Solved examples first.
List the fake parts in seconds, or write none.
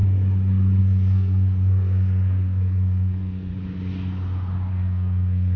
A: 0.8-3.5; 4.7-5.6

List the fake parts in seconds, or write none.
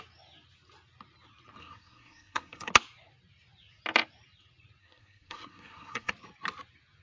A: 1.6-2.7; 4.8-6.1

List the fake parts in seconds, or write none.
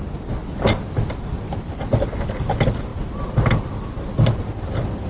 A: none